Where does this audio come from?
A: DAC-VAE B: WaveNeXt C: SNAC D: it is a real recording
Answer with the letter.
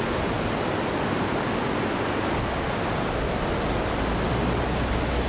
D